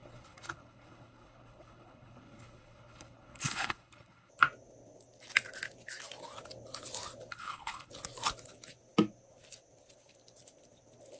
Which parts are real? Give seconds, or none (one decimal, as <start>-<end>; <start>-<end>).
4.3-7.3; 7.9-11.2